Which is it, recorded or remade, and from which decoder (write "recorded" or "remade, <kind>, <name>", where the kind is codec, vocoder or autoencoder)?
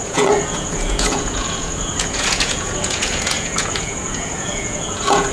remade, vocoder, Vocos